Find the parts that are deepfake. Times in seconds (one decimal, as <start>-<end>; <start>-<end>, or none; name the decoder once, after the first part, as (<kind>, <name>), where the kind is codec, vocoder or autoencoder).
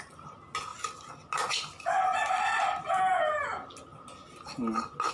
none